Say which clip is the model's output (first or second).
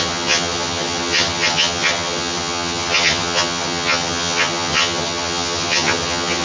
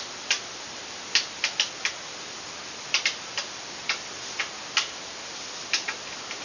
first